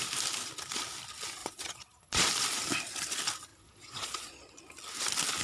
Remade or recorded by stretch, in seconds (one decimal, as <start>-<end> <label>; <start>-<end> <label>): 0.0-1.4 recorded; 1.4-2.3 remade; 2.3-3.5 recorded; 3.5-4.6 remade; 4.6-5.4 recorded